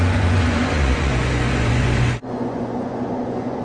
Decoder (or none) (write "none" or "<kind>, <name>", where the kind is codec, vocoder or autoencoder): vocoder, Vocos